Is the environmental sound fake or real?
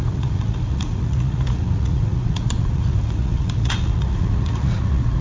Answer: fake